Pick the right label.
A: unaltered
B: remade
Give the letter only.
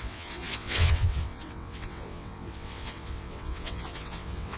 B